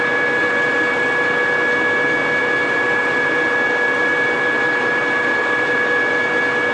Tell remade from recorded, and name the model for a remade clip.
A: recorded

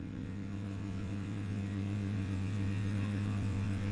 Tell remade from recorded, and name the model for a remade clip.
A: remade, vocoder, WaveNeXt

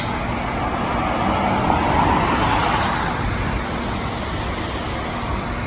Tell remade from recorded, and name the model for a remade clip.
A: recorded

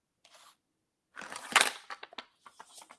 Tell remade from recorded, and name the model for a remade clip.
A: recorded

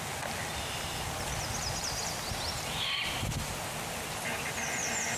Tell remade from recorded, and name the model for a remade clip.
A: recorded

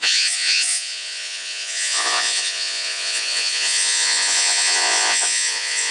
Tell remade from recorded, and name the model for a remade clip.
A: remade, vocoder, Vocos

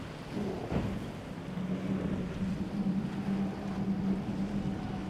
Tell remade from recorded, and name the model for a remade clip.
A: recorded